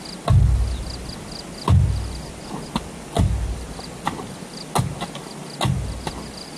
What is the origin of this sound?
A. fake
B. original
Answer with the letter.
B